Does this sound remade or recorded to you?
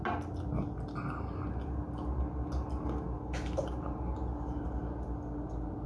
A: recorded